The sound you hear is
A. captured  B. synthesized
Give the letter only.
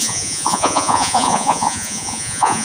B